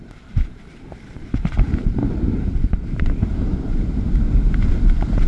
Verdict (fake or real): fake